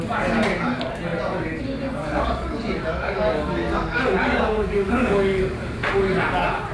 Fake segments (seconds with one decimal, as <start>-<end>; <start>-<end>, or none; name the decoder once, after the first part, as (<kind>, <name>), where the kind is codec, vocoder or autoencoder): 2.0-5.9 (codec, DAC)